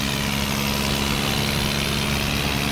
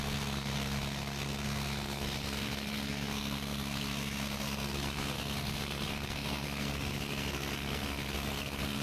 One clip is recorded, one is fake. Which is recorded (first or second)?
first